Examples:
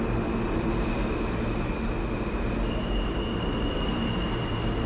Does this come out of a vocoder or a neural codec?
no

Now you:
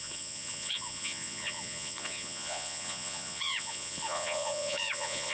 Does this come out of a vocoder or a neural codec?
yes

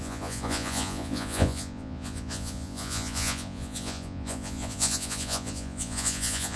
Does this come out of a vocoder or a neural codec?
yes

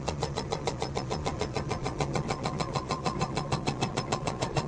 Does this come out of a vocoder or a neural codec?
yes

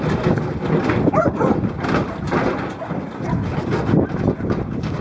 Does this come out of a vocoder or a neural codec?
no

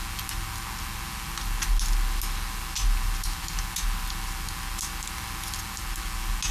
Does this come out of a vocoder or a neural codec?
no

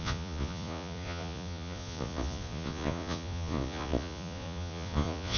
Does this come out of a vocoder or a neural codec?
yes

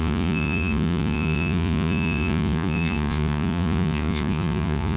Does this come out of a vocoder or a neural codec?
yes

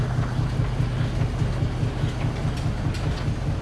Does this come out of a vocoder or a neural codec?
no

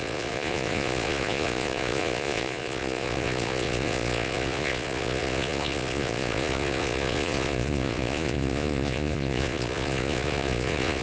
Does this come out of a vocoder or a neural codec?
yes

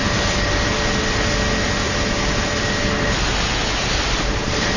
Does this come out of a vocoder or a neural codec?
no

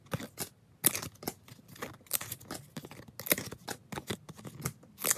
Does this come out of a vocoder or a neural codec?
no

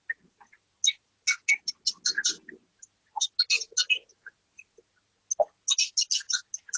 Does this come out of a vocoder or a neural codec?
no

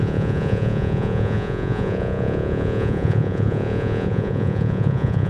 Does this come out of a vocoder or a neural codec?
yes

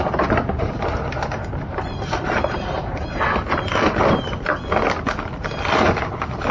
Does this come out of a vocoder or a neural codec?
no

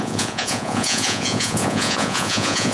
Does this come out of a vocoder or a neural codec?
yes